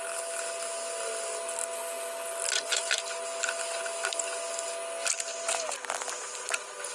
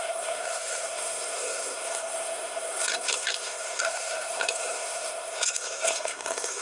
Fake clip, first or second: second